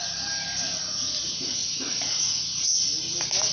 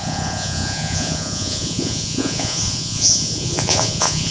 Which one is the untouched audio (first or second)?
first